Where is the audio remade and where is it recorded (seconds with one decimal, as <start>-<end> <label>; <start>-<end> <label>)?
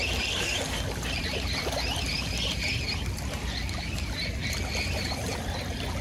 0.0-6.0 recorded